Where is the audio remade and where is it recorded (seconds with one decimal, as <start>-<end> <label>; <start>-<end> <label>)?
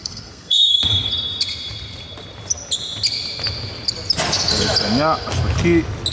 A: 0.0-1.1 remade; 1.1-6.1 recorded